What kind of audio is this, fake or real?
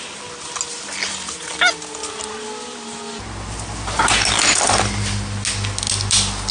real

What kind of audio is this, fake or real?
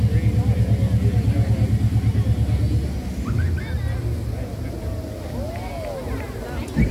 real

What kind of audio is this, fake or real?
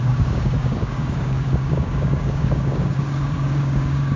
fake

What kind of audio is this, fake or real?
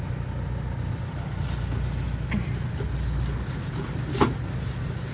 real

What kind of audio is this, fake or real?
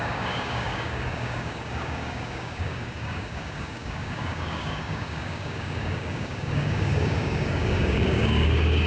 fake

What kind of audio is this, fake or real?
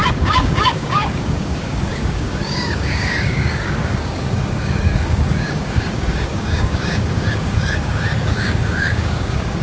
fake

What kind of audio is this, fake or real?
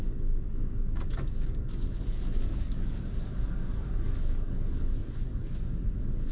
fake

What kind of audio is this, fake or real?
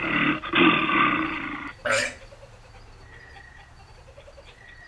real